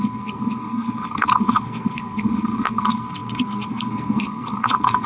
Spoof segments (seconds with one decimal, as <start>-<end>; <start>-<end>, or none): 0.0-5.1